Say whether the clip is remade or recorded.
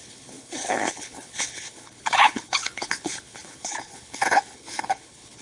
remade